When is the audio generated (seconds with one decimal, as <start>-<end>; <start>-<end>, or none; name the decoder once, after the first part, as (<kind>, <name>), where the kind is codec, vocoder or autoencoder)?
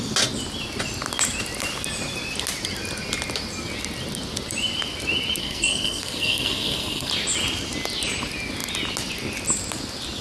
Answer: 5.4-7.1 (codec, SNAC)